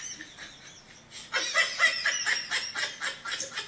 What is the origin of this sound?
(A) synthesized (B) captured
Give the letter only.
B